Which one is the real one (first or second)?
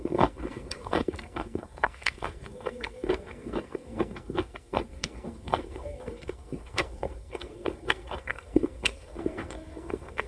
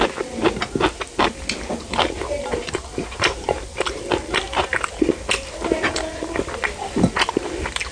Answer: second